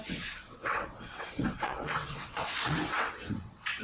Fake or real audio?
fake